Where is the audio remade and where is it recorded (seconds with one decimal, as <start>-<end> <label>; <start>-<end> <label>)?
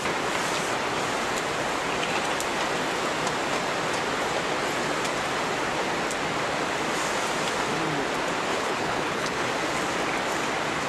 0.0-8.5 recorded; 8.5-9.5 remade; 9.5-10.9 recorded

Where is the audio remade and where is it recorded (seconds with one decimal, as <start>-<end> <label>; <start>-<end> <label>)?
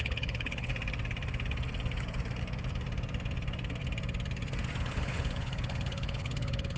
0.0-0.7 remade; 0.7-4.8 recorded; 4.8-6.8 remade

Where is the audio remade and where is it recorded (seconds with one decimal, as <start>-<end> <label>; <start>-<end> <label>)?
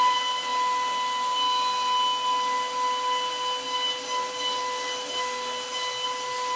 0.0-6.6 recorded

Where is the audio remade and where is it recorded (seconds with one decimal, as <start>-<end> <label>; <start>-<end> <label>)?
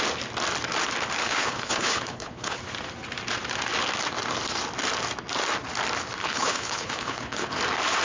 0.0-1.2 recorded; 1.2-2.6 remade; 2.6-6.2 recorded; 6.2-7.6 remade; 7.6-8.0 recorded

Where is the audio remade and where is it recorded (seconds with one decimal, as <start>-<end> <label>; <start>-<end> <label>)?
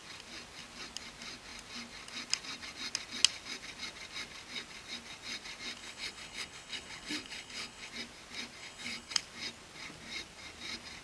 0.0-5.8 recorded; 5.8-7.9 remade; 7.9-8.6 recorded; 8.6-9.2 remade; 9.2-11.0 recorded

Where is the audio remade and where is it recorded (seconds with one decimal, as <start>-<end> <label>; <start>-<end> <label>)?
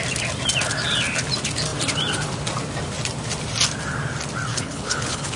0.0-4.5 recorded; 4.5-5.4 remade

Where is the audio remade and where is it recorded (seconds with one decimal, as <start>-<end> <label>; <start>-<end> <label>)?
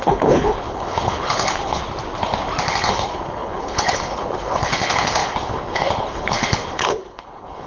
0.0-1.8 remade; 1.8-2.7 recorded; 2.7-7.7 remade